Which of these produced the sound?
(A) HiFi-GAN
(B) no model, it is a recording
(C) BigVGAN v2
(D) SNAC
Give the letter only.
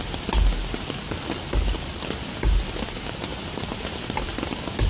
B